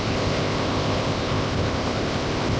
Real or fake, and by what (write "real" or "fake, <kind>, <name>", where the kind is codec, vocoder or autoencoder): fake, codec, ZipCodec